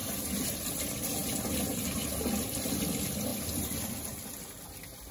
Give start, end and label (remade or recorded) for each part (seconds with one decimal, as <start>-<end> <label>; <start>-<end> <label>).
0.0-5.1 recorded